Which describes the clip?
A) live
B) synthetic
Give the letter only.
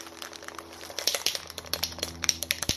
A